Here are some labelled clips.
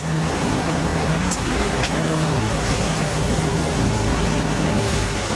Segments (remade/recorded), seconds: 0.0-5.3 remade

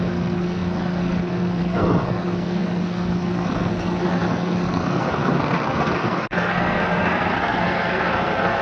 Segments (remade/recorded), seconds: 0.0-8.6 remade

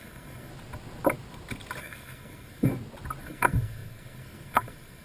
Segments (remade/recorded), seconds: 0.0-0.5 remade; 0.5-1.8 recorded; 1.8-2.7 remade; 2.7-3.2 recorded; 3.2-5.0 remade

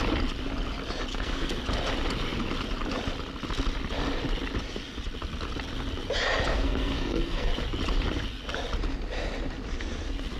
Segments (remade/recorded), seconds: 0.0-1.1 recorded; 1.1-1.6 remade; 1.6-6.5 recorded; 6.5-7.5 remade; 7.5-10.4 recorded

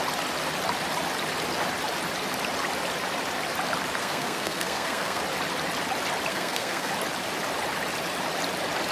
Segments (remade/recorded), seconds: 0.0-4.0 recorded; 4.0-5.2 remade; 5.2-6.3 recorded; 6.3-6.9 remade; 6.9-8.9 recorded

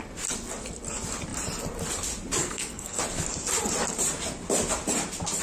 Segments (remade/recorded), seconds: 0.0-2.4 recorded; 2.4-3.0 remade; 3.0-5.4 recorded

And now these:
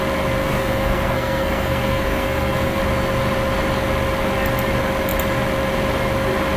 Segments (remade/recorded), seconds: 0.0-0.4 recorded; 0.4-2.8 remade; 2.8-6.6 recorded

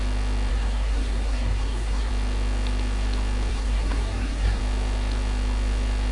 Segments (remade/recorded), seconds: 0.0-0.5 recorded; 0.5-2.1 remade; 2.1-3.5 recorded; 3.5-4.6 remade; 4.6-6.1 recorded